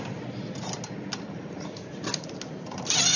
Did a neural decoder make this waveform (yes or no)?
no